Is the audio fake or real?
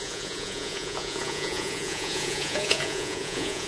fake